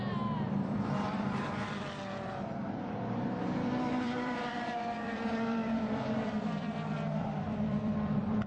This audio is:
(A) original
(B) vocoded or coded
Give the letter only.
B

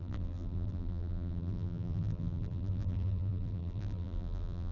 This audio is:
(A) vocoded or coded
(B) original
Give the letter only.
A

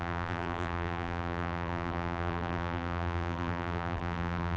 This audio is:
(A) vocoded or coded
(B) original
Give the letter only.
A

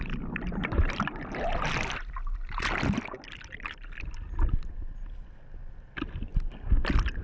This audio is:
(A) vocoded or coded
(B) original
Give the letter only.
B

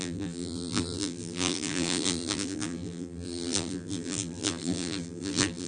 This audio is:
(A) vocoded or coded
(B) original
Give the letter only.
A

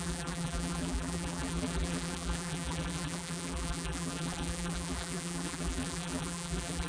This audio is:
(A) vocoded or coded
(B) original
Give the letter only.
A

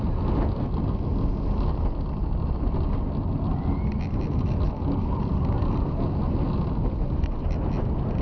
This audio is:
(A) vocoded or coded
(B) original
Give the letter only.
B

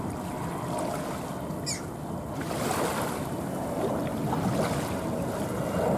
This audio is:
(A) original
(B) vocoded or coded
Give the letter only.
A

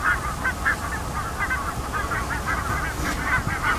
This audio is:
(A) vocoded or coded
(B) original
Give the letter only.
B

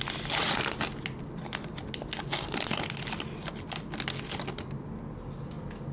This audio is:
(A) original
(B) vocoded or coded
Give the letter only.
A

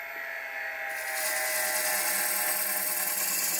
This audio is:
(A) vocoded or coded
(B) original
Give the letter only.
B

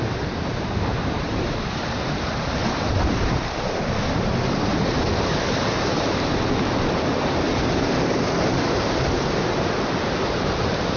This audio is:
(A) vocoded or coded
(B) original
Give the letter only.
A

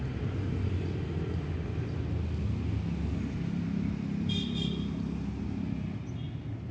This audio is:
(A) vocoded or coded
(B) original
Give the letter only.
B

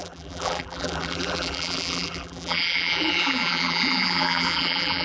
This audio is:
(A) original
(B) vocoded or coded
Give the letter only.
B